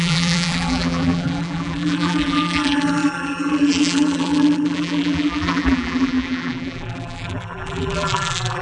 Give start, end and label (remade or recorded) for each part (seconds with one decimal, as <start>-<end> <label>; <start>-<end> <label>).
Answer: 0.0-8.6 remade